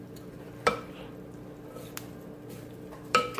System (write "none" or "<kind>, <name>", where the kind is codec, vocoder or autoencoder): none